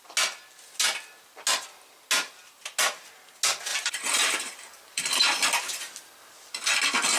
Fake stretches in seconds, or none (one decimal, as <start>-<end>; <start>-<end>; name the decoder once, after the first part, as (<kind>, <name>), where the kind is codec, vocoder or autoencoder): 3.7-5.4 (vocoder, BigVGAN v2)